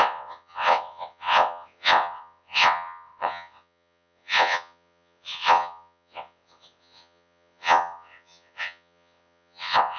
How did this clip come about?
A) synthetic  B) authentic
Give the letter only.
A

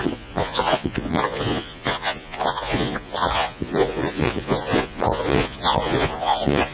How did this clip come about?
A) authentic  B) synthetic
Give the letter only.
B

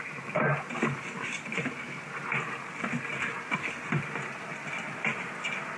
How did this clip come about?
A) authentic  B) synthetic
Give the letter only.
A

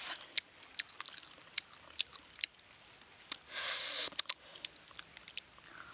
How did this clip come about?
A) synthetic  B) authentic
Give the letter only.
B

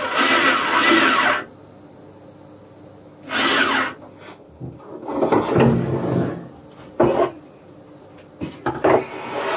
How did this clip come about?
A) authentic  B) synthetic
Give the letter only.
A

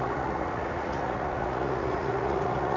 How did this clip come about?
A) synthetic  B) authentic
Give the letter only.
A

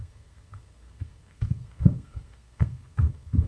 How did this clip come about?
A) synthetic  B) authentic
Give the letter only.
A